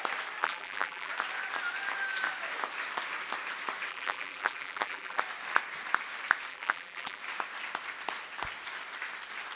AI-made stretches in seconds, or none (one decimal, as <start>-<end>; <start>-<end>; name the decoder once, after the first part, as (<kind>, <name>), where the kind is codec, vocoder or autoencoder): 0.4-1.1 (vocoder, BigVGAN v2); 3.9-5.2; 6.5-7.2